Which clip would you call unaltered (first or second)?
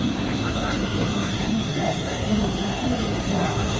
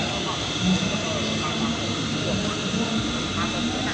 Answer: second